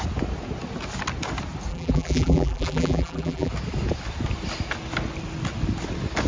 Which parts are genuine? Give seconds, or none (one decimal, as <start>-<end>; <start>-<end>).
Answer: 0.0-1.7; 3.5-6.3